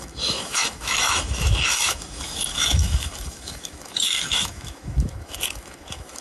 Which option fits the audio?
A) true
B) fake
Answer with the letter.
B